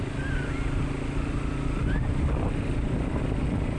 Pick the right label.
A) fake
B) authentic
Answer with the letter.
B